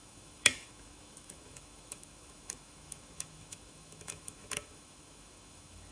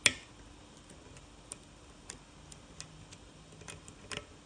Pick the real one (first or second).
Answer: second